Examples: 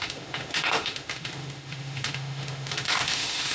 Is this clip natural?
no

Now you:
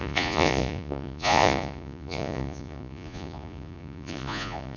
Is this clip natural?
no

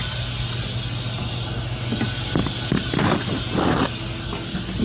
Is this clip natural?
yes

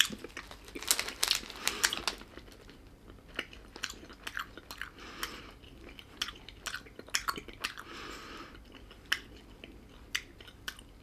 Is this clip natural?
yes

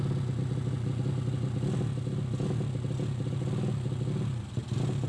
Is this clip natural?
yes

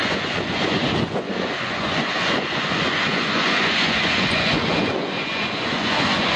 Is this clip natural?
no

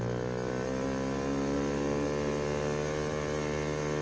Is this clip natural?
yes